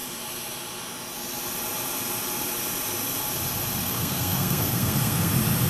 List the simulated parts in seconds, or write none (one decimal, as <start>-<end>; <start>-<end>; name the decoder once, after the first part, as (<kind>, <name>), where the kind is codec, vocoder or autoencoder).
3.8-5.3 (codec, SNAC)

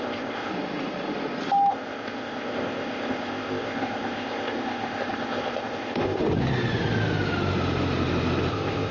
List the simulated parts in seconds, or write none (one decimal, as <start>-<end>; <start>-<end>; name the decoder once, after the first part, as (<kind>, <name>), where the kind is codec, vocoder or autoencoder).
0.0-0.5 (codec, ZipCodec); 1.7-6.2; 8.5-8.9

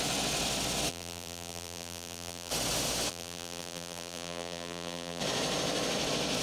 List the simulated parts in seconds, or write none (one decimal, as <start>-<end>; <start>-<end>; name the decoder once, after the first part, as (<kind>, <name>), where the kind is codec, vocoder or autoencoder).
0.9-2.5 (vocoder, BigVGAN v2); 3.1-5.2

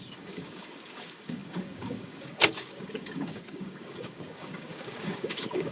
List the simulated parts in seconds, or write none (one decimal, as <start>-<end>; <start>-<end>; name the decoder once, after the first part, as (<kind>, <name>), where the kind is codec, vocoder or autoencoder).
0.0-5.7 (codec, DAC)

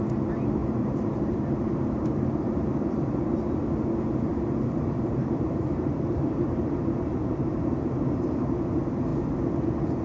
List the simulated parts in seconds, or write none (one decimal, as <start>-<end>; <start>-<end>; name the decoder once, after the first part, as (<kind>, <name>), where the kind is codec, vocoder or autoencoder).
0.6-3.2 (vocoder, BigVGAN v2); 4.3-8.3

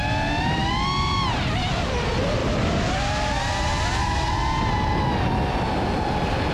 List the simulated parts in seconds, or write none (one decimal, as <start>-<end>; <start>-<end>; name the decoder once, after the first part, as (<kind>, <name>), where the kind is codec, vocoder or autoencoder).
none